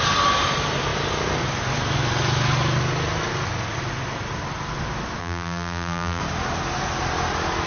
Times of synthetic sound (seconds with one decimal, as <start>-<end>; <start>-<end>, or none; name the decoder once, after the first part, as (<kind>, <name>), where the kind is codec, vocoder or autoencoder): 5.2-6.2 (vocoder, BigVGAN v2)